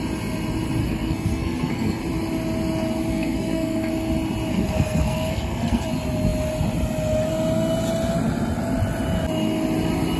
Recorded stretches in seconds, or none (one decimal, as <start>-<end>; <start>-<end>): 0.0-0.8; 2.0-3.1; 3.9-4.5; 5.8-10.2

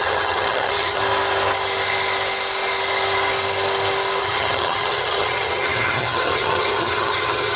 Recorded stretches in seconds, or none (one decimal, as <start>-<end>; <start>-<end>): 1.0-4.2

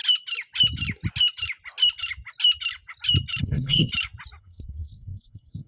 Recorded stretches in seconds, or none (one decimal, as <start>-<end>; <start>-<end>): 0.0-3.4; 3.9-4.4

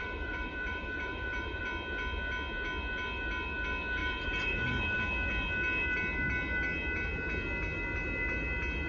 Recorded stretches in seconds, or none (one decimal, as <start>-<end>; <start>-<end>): 1.6-4.0; 5.0-8.9

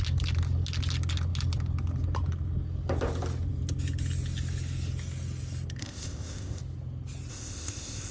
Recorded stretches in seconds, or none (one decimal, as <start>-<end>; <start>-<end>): 0.0-5.8; 6.6-7.3